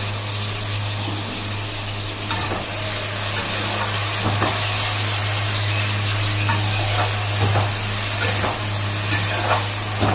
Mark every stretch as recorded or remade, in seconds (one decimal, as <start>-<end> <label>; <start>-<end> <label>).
0.0-10.1 recorded